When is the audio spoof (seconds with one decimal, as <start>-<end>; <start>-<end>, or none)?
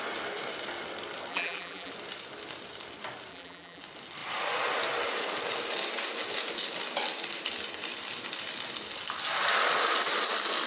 1.3-1.9; 3.3-3.8